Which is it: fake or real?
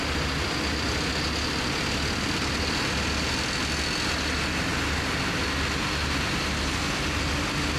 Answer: real